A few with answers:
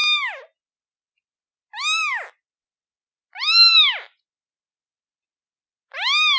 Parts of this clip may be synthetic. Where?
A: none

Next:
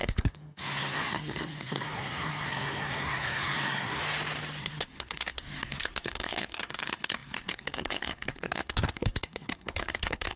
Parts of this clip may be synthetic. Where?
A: 0.0-4.0 (codec, SNAC); 4.6-10.4

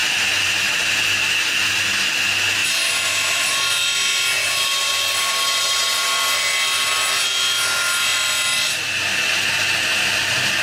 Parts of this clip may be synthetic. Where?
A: none

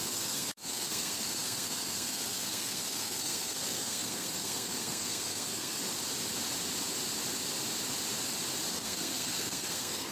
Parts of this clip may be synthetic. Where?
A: 0.0-5.8 (codec, SNAC); 8.7-10.1

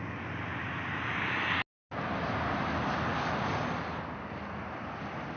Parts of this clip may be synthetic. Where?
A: none

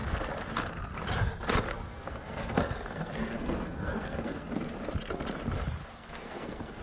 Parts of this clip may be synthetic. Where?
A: 1.7-4.5 (codec, SNAC); 5.8-6.8